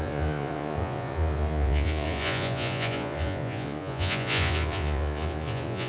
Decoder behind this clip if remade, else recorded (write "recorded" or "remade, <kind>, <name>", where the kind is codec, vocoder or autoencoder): remade, vocoder, Vocos